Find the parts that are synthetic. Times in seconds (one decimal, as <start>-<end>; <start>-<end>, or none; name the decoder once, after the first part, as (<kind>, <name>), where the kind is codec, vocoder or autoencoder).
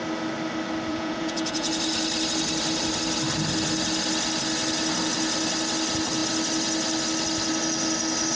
0.9-1.7 (vocoder, Vocos)